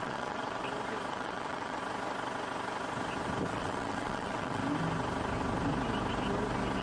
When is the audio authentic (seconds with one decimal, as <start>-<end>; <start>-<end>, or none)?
0.6-1.1; 1.8-3.5; 4.6-6.8